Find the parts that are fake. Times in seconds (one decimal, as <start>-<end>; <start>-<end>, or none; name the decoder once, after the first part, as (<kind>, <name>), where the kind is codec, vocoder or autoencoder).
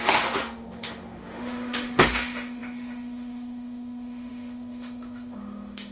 0.0-5.9 (autoencoder, DAC-VAE)